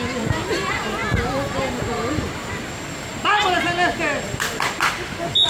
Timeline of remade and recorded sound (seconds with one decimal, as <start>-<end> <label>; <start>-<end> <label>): 0.0-5.5 recorded